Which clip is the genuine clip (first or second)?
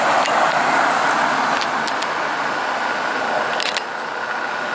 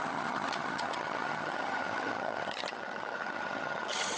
first